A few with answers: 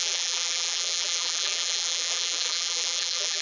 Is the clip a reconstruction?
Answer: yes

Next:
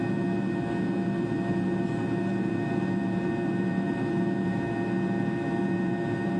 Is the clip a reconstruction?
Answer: yes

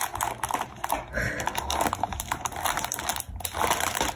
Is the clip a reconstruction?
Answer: no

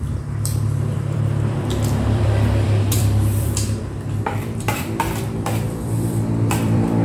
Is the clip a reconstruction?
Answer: yes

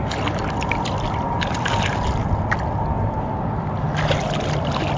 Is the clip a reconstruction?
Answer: no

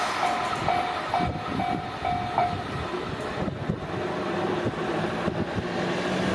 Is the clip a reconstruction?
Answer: no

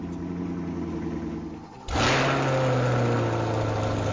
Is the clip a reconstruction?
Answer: no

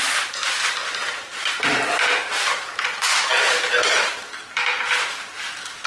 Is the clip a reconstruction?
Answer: no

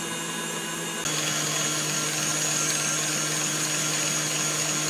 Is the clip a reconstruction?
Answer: no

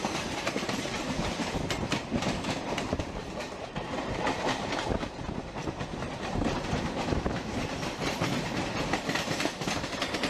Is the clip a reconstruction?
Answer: yes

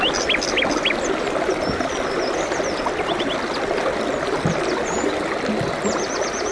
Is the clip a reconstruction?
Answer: no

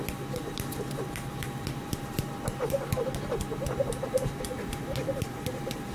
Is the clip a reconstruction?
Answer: yes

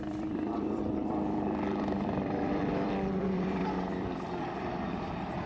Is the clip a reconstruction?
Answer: yes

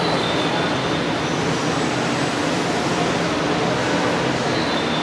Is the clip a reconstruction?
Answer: no